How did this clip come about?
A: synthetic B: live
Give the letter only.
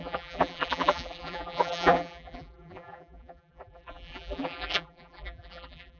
A